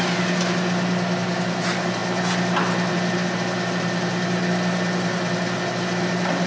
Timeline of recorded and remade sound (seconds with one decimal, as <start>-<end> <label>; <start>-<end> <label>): 0.0-6.5 recorded